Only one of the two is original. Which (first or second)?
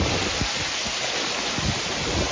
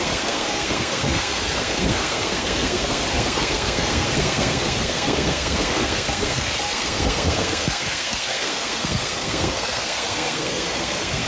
first